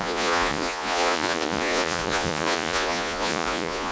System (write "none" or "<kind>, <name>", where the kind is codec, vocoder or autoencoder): vocoder, Vocos